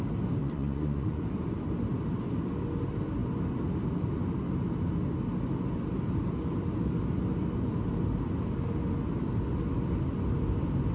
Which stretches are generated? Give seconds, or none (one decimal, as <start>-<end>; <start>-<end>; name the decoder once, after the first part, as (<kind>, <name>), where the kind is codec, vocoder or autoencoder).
0.4-1.2 (vocoder, Vocos)